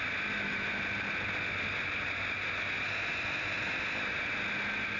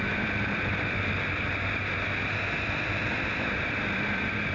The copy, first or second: second